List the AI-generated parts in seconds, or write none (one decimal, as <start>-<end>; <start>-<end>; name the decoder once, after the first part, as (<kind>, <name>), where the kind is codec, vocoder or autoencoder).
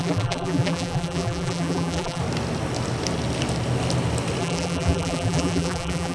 0.0-2.2 (vocoder, BigVGAN v2); 4.4-6.1